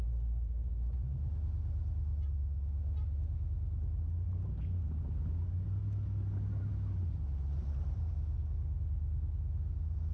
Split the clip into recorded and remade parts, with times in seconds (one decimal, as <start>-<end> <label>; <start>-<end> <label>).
0.0-7.6 recorded; 7.6-8.1 remade; 8.1-10.1 recorded